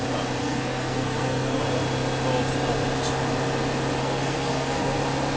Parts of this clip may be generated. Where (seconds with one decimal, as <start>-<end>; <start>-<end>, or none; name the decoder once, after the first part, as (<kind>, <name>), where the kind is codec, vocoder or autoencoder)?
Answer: 0.4-1.6 (codec, SNAC); 4.0-5.0